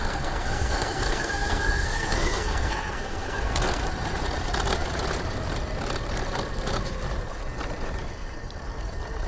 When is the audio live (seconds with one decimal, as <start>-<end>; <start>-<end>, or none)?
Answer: 3.8-9.3